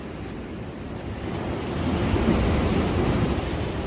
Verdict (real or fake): real